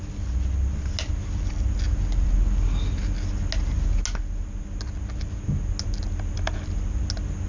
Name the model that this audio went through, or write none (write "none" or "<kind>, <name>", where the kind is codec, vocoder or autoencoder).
none